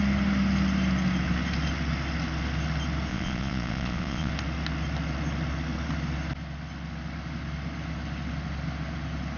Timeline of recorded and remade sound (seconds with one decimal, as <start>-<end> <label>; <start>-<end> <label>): 0.0-3.1 recorded; 3.1-4.3 remade; 4.3-9.4 recorded